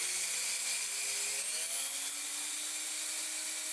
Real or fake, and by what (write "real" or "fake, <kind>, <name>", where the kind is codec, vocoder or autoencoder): real